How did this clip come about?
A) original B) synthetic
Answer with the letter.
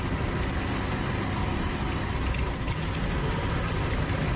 A